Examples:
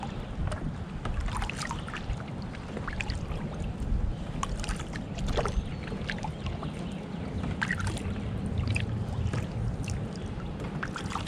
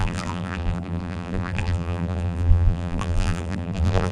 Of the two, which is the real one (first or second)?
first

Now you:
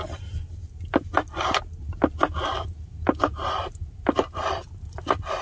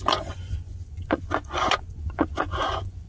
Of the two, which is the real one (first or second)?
first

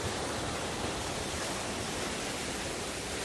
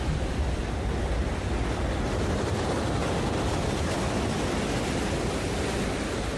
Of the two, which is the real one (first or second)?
second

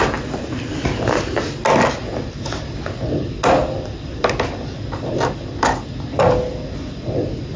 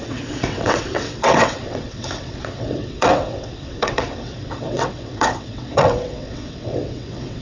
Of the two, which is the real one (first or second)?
first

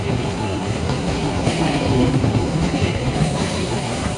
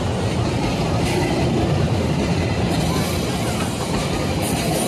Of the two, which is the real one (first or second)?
second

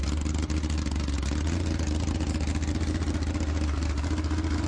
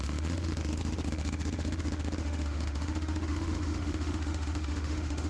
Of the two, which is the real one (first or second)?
first